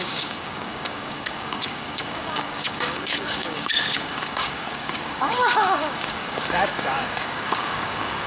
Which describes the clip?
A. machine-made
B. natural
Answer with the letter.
A